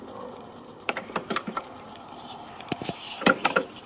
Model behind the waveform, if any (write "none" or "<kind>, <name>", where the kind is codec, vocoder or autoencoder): vocoder, BigVGAN v2